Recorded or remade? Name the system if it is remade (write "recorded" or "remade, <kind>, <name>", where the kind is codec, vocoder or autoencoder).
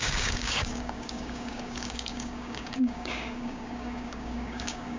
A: remade, codec, DAC